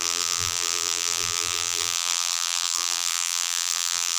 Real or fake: fake